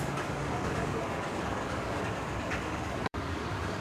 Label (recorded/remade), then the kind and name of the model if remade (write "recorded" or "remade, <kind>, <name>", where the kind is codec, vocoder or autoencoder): remade, codec, DAC